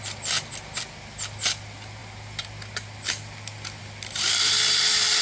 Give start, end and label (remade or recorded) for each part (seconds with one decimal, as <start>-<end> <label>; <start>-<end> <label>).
0.0-5.2 recorded